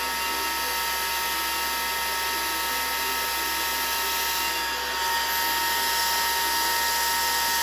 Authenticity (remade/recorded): recorded